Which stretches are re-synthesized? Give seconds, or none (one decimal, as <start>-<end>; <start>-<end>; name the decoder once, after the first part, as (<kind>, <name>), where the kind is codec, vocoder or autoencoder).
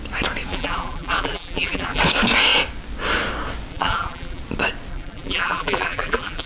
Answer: 0.5-2.0 (vocoder, BigVGAN v2); 3.7-4.4; 4.9-6.5